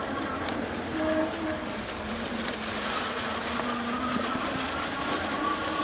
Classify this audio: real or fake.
real